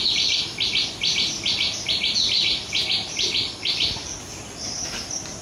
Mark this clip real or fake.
real